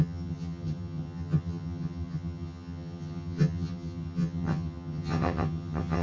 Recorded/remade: remade